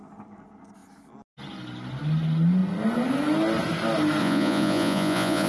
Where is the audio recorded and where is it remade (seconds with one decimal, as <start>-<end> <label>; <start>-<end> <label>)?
0.0-4.2 recorded; 4.2-5.5 remade